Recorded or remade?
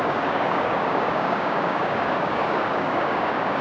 remade